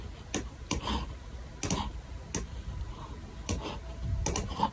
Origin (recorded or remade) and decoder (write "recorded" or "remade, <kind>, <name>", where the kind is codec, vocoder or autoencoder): recorded